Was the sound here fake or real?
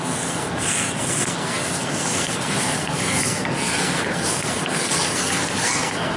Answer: fake